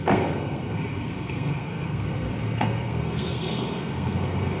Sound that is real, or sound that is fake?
fake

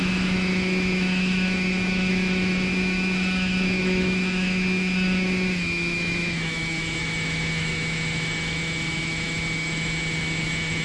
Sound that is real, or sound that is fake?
fake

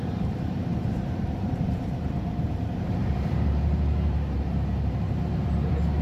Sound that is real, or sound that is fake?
fake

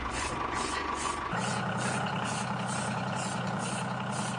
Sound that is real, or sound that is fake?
fake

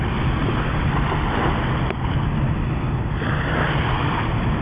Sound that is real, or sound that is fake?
real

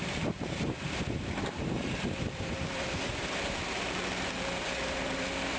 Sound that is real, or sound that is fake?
fake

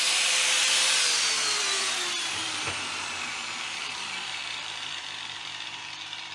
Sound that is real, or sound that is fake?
fake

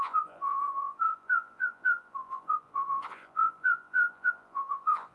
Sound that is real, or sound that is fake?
fake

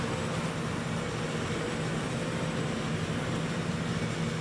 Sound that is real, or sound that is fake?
real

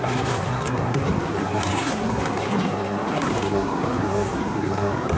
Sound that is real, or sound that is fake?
fake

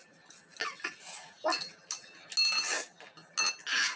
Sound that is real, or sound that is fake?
real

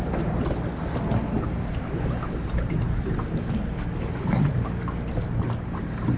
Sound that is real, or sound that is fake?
real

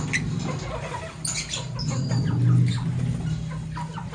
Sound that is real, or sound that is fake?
real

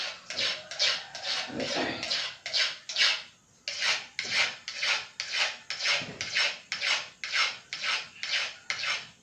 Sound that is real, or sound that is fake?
real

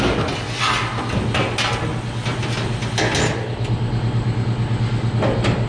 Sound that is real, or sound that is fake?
real